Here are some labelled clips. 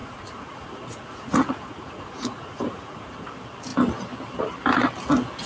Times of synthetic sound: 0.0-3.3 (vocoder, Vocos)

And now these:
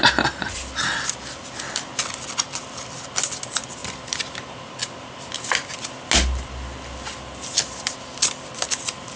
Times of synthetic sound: none

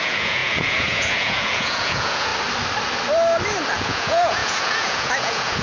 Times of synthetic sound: 0.0-2.3 (vocoder, Vocos); 3.8-5.6

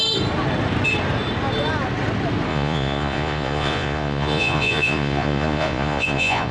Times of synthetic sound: 2.5-6.5 (vocoder, Vocos)

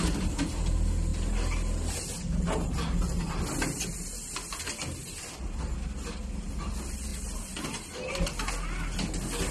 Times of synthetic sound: none

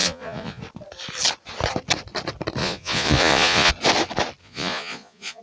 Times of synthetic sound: 0.0-0.6 (vocoder, Vocos); 2.6-3.7; 4.4-5.4